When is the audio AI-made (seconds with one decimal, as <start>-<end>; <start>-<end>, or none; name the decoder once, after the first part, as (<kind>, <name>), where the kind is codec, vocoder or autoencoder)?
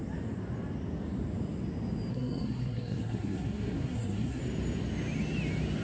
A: 2.1-4.4 (codec, SNAC)